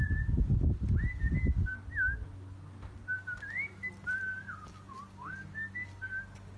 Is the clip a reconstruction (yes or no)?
no